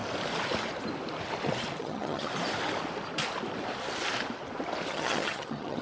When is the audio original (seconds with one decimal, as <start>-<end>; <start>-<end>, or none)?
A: 0.0-1.8; 2.3-4.9

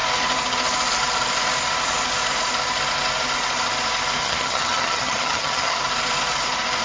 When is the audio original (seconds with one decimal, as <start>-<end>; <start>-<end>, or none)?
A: 0.0-4.2; 5.8-6.8

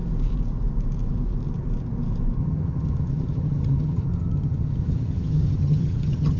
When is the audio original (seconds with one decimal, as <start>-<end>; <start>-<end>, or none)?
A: 0.0-2.4

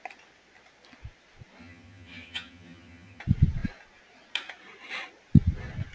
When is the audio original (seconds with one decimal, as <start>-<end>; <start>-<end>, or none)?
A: 0.0-1.6; 3.2-5.9